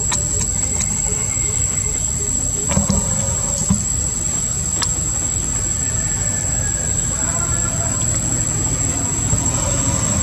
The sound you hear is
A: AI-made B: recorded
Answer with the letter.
B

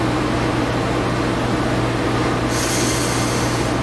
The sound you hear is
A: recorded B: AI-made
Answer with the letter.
A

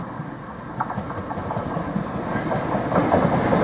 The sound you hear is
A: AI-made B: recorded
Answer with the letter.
B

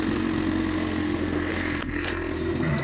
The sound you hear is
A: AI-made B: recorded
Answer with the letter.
A